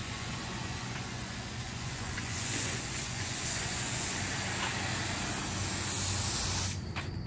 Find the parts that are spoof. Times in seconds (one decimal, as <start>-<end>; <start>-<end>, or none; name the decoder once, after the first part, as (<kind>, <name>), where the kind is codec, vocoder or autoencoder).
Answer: 0.0-4.2 (vocoder, Vocos)